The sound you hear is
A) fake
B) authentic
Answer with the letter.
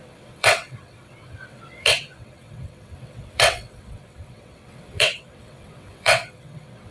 A